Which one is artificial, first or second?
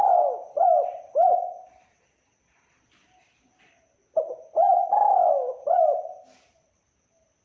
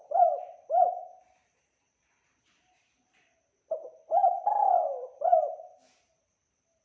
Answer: second